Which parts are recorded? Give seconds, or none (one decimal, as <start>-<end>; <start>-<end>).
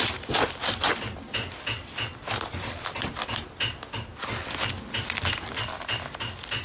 0.0-6.6